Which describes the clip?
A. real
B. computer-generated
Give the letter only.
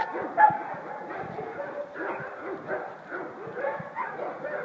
A